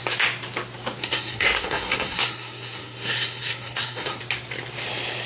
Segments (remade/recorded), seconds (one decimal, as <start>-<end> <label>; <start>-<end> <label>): 0.0-1.0 recorded; 1.0-4.2 remade; 4.2-5.3 recorded